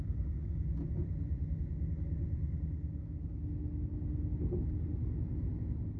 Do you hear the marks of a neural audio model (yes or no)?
no